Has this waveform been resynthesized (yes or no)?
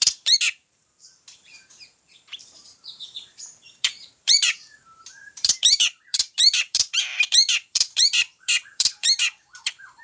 yes